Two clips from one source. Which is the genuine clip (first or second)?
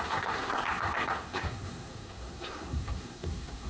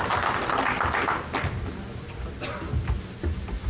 second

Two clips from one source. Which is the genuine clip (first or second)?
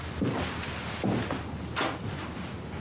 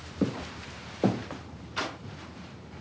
first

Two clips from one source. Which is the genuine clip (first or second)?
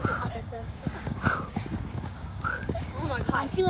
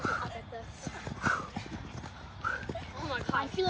second